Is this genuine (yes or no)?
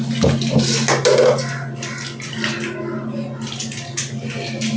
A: yes